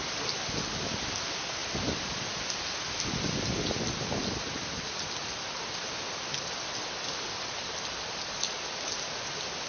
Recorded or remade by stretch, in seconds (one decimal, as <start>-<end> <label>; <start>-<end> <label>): 0.0-9.7 recorded